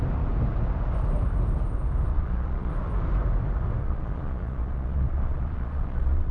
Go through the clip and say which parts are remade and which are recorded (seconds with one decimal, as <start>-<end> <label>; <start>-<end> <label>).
0.0-2.1 recorded; 2.1-2.7 remade; 2.7-3.8 recorded; 3.8-6.3 remade